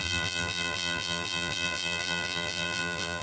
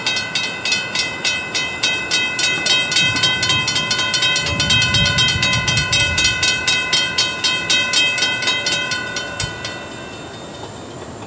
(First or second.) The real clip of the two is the second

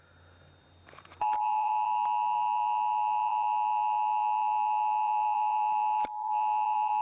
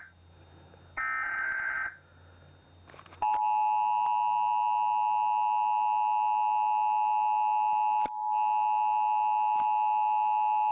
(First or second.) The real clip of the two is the second